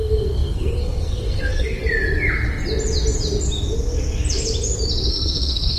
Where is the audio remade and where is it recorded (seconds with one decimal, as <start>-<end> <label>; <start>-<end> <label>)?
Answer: 0.0-1.8 remade; 1.8-5.1 recorded; 5.1-5.8 remade